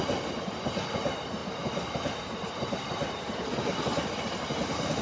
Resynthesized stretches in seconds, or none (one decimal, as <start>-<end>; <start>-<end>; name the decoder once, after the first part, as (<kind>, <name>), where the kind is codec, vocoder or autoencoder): 1.4-4.4 (vocoder, BigVGAN v2)